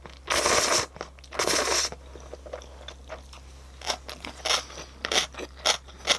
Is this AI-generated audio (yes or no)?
no